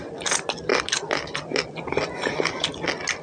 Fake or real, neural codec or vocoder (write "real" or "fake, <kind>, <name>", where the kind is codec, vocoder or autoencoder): real